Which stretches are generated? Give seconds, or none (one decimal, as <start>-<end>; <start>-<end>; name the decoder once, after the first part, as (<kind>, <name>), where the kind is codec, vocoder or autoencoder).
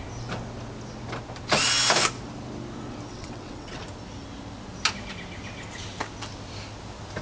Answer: 3.1-3.8 (vocoder, WaveNeXt)